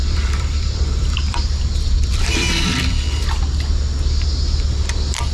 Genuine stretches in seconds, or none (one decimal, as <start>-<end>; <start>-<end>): 3.2-5.3